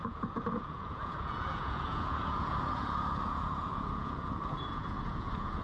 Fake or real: fake